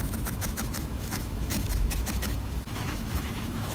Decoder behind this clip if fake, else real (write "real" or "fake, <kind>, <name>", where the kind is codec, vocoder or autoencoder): fake, autoencoder, DAC-VAE